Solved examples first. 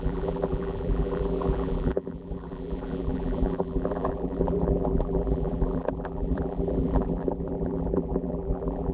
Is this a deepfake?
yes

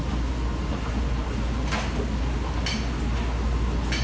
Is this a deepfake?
no